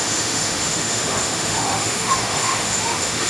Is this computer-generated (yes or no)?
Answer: yes